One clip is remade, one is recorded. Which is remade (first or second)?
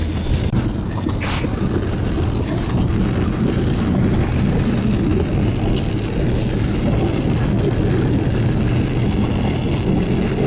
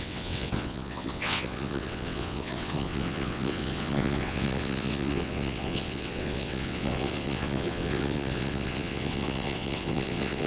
second